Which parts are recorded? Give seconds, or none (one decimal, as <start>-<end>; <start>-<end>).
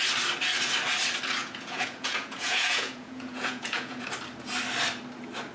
0.0-1.4; 4.1-5.5